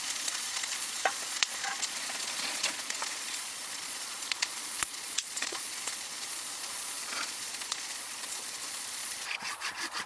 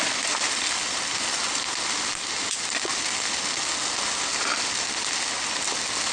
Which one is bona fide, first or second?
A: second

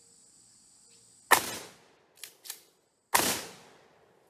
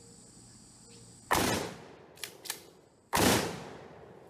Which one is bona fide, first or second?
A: first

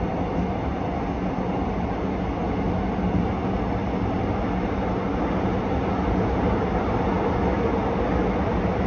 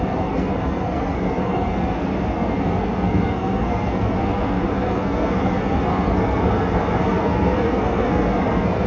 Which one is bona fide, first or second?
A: first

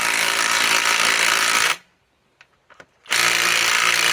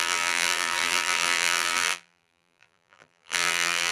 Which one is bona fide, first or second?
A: first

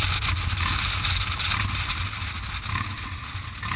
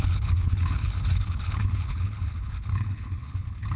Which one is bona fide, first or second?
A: first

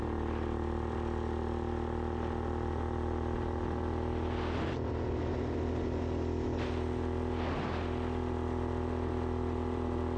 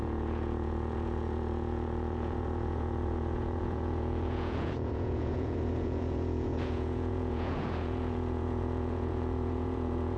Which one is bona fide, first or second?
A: first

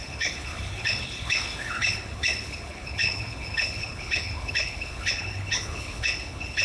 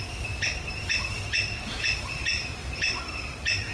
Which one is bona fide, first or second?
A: second